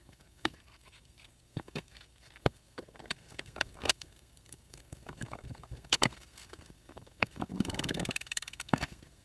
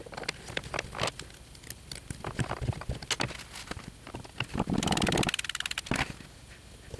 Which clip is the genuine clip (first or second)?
second